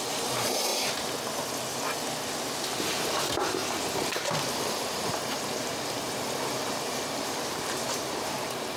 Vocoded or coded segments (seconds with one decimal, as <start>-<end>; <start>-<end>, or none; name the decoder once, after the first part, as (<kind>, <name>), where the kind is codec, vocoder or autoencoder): 0.0-0.7 (vocoder, BigVGAN v2); 2.8-8.8